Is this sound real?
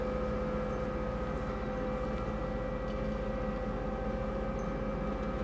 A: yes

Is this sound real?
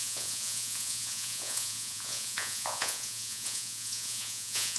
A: no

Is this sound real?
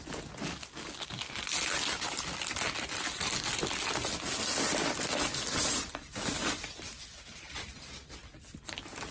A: yes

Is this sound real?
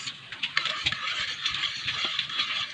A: yes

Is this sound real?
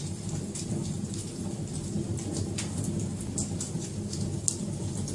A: yes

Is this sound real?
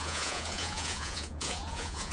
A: no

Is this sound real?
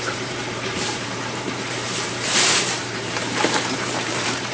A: no